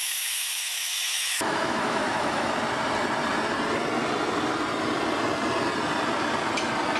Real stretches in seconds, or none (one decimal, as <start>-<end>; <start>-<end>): 2.5-7.0